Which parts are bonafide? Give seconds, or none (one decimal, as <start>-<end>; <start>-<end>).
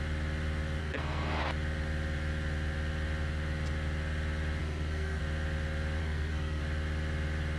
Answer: 0.0-0.8; 1.4-4.6; 5.2-6.0; 6.6-7.6